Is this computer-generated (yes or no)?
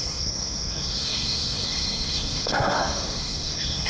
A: yes